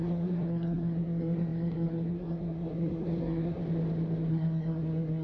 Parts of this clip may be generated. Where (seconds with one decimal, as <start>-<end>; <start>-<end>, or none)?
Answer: 0.0-3.6; 4.3-5.2